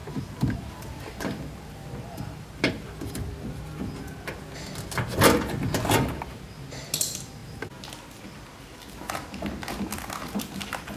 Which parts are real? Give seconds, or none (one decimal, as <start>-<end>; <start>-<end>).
3.3-11.0